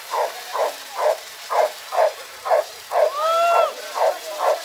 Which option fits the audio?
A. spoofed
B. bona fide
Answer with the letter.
A